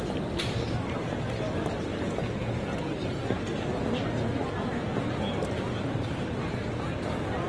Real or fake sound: real